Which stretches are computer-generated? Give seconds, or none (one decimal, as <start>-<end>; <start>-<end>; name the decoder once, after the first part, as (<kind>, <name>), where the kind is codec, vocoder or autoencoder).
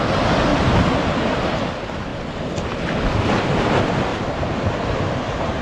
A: 0.5-1.7 (vocoder, BigVGAN v2); 4.1-5.6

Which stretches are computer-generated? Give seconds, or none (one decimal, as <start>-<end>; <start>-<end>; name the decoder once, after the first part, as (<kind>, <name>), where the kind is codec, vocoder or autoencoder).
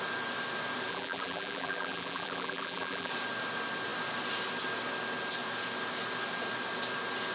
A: 0.9-3.1 (vocoder, BigVGAN v2)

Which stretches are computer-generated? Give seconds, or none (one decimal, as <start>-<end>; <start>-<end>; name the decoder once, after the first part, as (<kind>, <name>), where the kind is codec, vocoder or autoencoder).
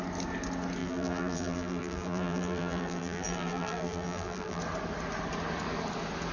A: 0.8-4.6 (vocoder, BigVGAN v2)